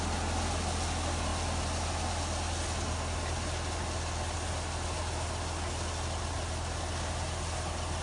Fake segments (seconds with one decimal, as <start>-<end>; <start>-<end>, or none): none